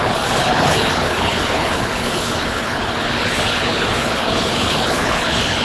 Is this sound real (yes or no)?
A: no